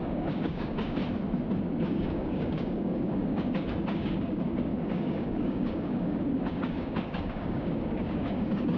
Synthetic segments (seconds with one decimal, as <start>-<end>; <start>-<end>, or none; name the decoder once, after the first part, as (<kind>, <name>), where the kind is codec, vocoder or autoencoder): 0.0-1.0 (codec, DAC); 1.8-8.8